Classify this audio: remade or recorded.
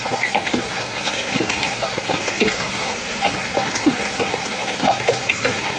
remade